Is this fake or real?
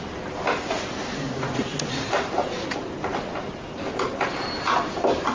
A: real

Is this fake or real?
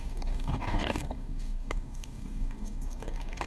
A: fake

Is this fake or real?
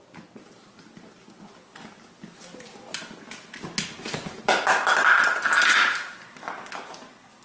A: real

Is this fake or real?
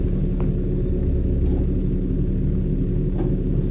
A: real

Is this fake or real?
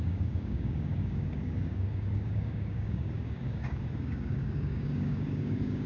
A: fake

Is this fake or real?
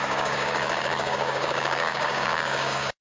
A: fake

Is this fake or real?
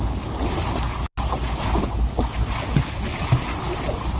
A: real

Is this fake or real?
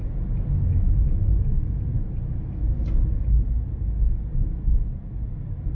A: real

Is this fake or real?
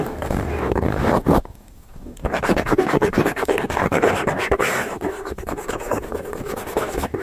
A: fake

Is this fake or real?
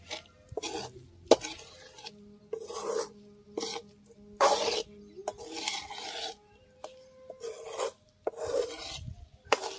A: real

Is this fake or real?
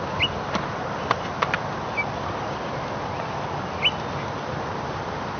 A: real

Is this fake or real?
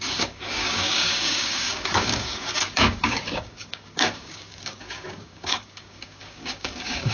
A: fake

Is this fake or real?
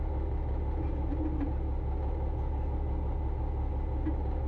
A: real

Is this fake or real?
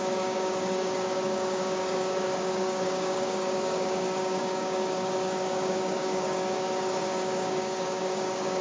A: fake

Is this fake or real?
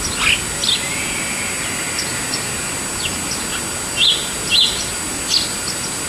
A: real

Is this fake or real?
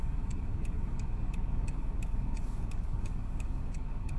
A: fake